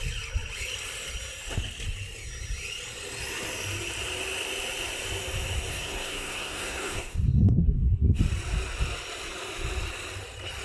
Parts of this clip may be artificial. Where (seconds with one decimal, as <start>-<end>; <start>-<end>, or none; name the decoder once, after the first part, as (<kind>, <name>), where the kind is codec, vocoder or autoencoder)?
5.7-8.2 (codec, SNAC)